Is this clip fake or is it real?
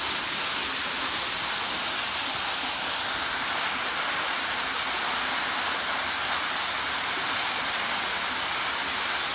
real